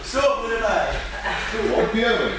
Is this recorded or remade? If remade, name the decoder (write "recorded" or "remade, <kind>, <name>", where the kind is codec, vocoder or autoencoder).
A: recorded